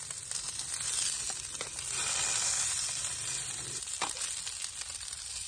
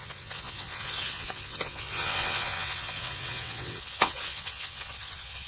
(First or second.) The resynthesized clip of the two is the second